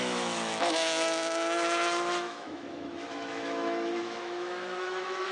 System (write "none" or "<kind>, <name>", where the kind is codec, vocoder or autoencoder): autoencoder, DAC-VAE